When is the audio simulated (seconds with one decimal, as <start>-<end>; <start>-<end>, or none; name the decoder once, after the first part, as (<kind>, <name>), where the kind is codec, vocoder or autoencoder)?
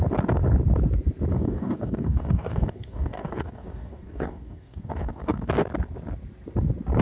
1.3-5.5 (codec, DAC)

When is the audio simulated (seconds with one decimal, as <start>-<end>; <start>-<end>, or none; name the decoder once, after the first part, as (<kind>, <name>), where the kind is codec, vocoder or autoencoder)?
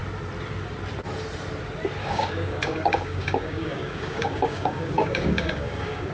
2.0-6.1 (codec, DAC)